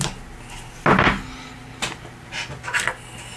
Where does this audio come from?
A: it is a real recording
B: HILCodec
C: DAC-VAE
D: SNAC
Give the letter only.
A